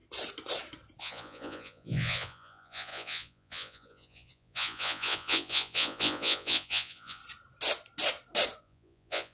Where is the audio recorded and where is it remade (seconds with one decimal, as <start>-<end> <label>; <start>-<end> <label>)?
0.0-1.0 recorded; 1.0-7.2 remade; 7.2-8.6 recorded; 8.6-9.3 remade